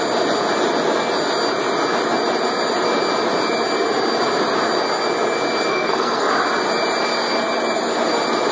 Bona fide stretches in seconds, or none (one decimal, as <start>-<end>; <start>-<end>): 0.0-5.7; 6.3-8.5